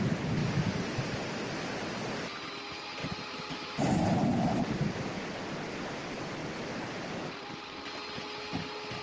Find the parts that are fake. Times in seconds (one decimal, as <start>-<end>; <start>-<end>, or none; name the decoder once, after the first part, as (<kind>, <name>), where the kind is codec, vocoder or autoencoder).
3.0-5.1 (vocoder, BigVGAN v2); 6.4-7.8